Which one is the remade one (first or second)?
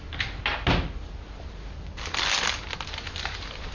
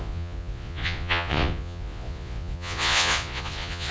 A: second